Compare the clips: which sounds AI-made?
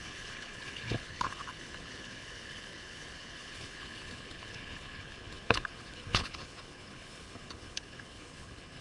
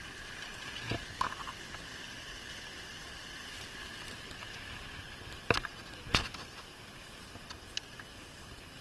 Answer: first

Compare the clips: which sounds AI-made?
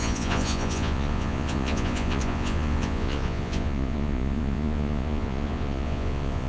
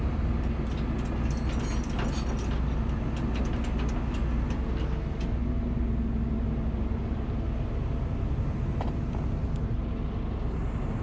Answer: first